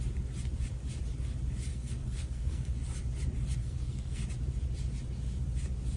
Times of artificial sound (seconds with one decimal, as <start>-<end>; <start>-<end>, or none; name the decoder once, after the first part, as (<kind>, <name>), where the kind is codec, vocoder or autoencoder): 1.7-2.8 (codec, SNAC); 3.6-4.2